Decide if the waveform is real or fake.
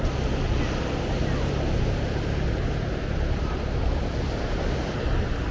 real